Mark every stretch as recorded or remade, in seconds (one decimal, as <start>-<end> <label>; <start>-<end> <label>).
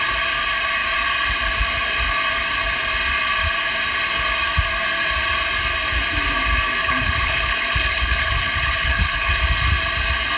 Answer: 0.0-6.8 recorded; 6.8-9.4 remade; 9.4-10.4 recorded